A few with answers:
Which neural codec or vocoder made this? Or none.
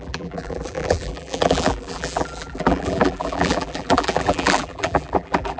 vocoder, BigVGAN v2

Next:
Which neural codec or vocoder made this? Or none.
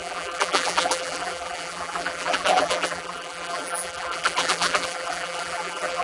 vocoder, BigVGAN v2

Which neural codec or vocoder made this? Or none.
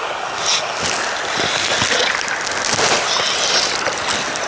none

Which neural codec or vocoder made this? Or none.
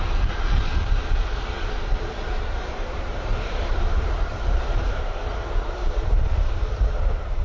vocoder, BigVGAN v2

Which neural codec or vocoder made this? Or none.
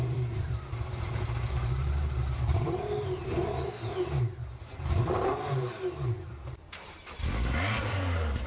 vocoder, BigVGAN v2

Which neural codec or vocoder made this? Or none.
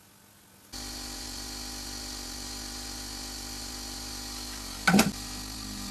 none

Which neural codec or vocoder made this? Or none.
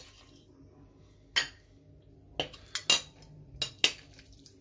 none